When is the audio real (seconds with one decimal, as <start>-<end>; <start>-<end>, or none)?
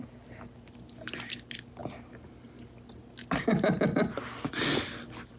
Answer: 0.0-5.4